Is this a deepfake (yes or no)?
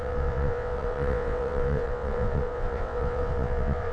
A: yes